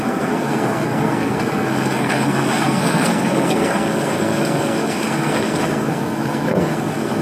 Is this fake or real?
fake